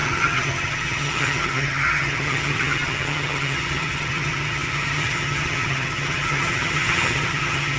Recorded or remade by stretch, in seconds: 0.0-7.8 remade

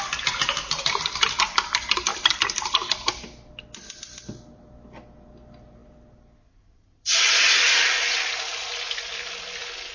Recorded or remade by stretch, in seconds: 0.0-9.9 recorded

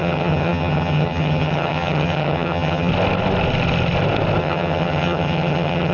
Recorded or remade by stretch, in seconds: 0.0-2.9 remade; 2.9-4.4 recorded; 4.4-5.9 remade

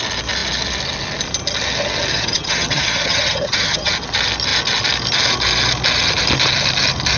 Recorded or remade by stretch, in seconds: 0.0-2.1 recorded; 2.1-3.9 remade; 3.9-7.2 recorded